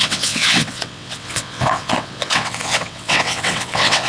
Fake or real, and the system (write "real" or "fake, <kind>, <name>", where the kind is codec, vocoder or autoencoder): fake, vocoder, WaveNeXt